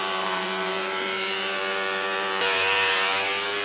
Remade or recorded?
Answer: remade